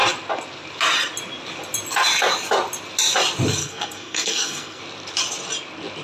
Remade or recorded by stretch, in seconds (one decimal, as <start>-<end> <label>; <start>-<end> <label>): 0.0-3.6 recorded; 3.6-4.8 remade; 4.8-6.0 recorded